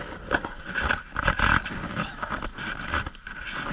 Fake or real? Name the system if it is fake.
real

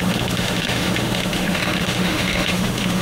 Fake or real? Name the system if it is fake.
fake, autoencoder, DAC-VAE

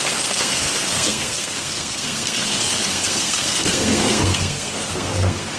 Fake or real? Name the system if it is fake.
fake, codec, SNAC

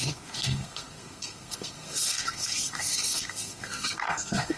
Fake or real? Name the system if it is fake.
fake, codec, SNAC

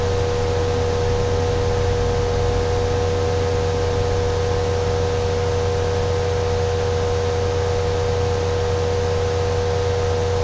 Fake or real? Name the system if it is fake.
real